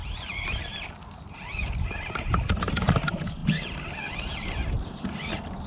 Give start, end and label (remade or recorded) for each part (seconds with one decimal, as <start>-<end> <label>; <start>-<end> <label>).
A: 0.0-5.7 recorded